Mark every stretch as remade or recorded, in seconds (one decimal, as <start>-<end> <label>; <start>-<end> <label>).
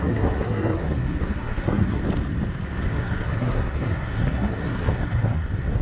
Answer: 0.0-2.0 remade; 2.0-2.9 recorded; 2.9-5.8 remade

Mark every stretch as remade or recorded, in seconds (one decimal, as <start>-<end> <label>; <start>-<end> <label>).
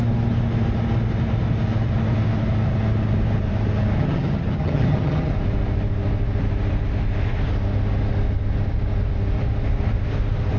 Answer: 0.0-4.0 recorded; 4.0-5.3 remade; 5.3-10.6 recorded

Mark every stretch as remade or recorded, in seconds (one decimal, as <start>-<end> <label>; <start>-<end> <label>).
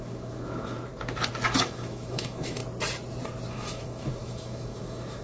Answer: 0.0-0.9 remade; 0.9-1.6 recorded; 1.6-2.6 remade; 2.6-3.5 recorded; 3.5-5.2 remade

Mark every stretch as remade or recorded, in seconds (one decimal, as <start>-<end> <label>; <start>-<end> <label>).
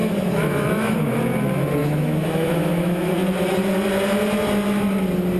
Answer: 0.0-1.2 remade; 1.2-1.8 recorded; 1.8-3.1 remade; 3.1-5.4 recorded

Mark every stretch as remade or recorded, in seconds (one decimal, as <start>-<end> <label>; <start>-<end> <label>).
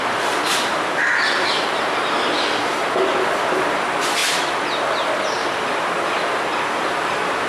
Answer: 0.0-7.5 recorded